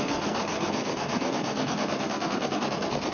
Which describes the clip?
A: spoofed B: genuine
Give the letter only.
A